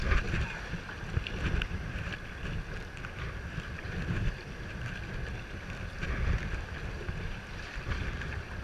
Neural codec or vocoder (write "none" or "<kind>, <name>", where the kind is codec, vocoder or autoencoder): none